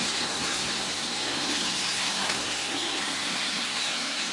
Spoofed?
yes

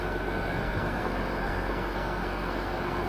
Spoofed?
yes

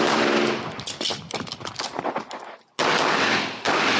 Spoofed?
no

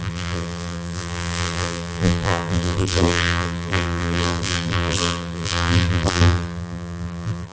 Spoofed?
yes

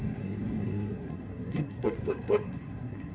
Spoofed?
yes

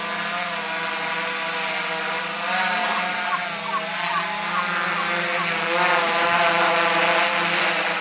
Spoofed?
no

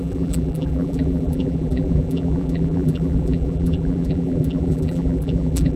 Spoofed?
yes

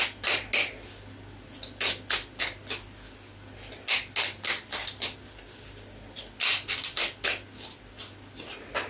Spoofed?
no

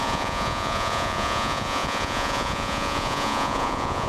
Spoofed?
yes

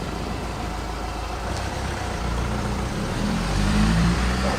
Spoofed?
yes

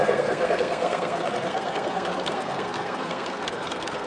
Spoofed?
yes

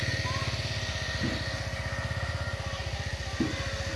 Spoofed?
no